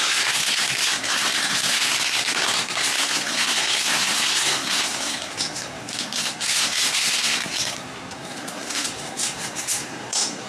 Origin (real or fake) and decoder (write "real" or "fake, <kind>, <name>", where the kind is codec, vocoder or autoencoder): fake, codec, SNAC